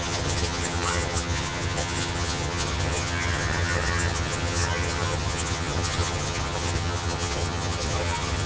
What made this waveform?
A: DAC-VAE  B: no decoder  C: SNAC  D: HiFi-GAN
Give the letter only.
D